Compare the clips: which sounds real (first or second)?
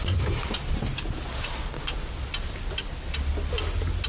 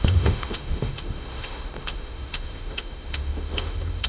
first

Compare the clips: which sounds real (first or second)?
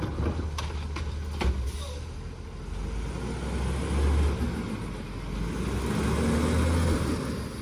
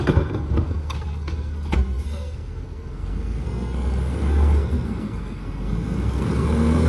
first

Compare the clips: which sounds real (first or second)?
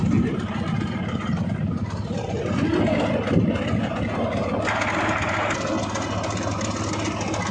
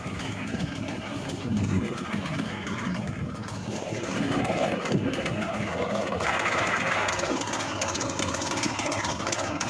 first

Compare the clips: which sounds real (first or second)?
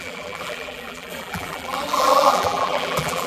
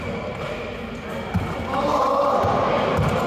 second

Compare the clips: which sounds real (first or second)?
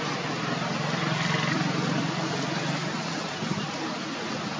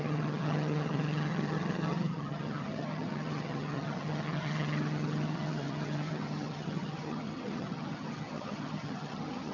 first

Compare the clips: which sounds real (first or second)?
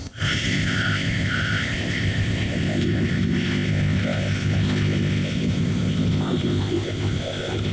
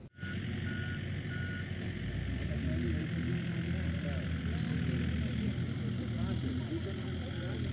second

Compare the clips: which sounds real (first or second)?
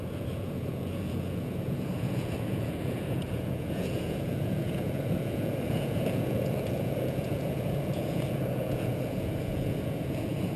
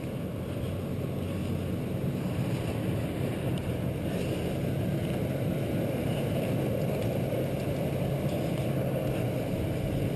second